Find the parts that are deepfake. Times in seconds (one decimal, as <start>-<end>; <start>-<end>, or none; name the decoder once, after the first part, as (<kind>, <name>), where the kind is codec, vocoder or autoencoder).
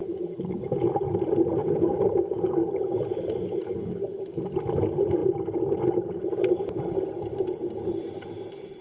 0.0-0.7 (codec, DAC); 1.6-2.7